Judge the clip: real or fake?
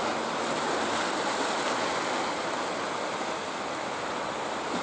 real